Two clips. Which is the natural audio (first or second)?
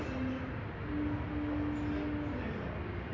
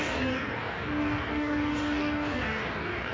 first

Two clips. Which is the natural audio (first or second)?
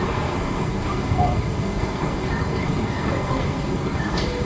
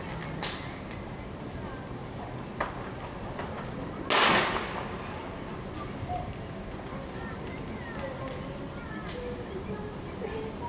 second